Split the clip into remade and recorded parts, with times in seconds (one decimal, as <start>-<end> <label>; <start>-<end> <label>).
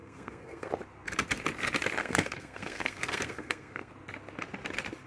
0.0-0.7 remade; 0.7-2.0 recorded; 2.0-3.9 remade; 3.9-5.1 recorded